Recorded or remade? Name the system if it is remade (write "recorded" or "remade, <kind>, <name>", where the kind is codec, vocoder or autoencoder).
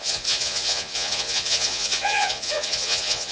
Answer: remade, vocoder, Vocos